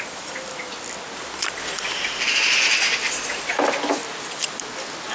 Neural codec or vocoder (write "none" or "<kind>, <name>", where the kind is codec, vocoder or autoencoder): none